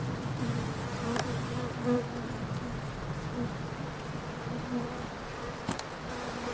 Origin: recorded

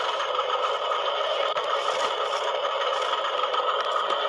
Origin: recorded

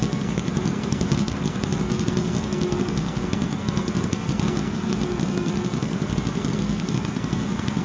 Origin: remade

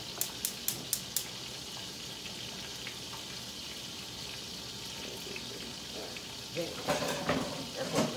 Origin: recorded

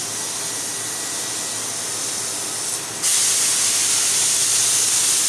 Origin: recorded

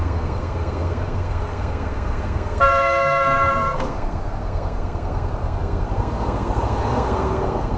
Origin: remade